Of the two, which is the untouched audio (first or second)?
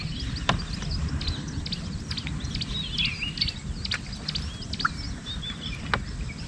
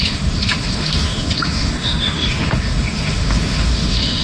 first